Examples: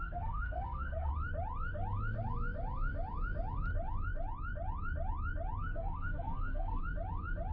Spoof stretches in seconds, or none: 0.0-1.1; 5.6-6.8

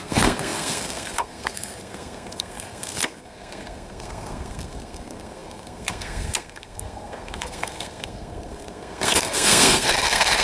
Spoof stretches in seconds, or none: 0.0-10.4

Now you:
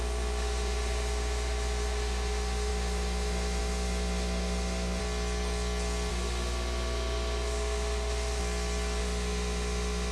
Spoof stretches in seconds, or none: 0.0-5.0; 6.1-8.4; 9.0-10.1